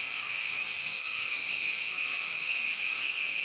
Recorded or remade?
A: remade